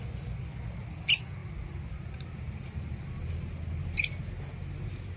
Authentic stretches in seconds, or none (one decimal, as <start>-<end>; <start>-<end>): 0.0-5.2